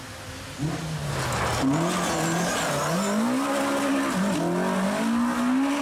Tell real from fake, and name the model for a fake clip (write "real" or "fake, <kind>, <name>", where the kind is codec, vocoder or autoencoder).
real